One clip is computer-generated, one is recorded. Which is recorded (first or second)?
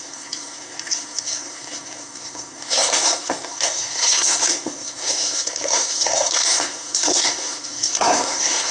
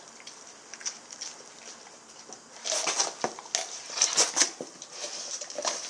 second